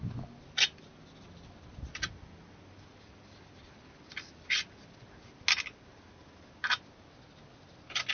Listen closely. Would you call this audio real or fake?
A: real